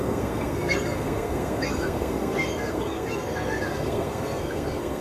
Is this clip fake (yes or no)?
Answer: yes